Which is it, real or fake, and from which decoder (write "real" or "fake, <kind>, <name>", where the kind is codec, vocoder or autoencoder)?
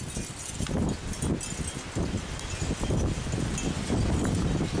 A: real